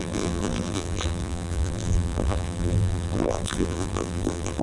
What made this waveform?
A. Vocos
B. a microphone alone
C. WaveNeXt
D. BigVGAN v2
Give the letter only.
D